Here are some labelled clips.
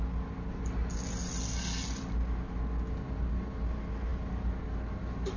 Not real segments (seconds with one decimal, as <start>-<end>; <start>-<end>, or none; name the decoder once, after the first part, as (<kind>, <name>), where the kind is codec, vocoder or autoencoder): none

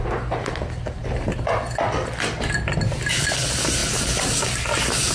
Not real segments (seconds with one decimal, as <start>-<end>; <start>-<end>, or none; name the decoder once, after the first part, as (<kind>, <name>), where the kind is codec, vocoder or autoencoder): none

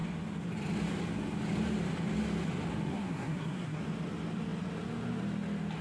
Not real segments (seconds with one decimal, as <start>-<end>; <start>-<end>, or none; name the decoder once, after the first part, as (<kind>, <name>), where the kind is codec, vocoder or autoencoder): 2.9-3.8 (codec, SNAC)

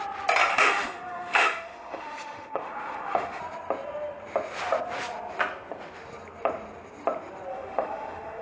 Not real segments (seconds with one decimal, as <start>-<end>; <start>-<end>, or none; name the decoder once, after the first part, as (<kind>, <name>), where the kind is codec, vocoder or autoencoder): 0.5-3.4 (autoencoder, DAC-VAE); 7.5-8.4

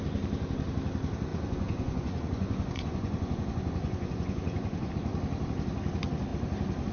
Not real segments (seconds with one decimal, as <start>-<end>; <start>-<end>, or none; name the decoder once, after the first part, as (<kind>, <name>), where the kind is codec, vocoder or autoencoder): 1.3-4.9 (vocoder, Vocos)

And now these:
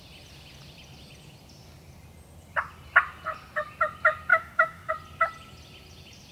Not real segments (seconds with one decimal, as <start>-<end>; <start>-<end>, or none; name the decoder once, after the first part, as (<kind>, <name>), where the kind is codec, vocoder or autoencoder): 4.3-4.9 (autoencoder, DAC-VAE)

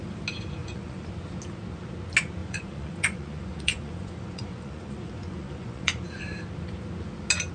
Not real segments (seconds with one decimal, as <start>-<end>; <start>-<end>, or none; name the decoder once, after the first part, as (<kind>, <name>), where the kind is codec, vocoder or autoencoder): 0.6-1.1 (vocoder, Vocos); 2.4-6.2